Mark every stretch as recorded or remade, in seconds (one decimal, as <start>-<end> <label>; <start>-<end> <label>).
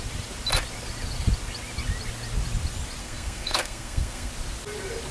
0.0-3.0 recorded; 3.0-4.3 remade; 4.3-5.1 recorded